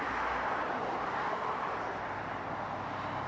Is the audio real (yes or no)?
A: yes